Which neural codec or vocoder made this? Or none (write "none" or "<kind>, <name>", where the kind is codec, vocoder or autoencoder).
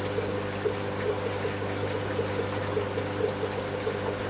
none